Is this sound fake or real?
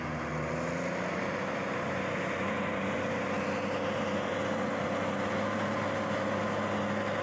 real